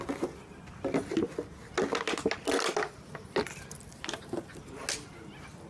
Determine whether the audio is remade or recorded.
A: recorded